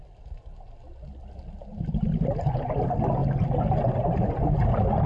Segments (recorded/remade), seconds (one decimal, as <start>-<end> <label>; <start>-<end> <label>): 0.0-5.1 recorded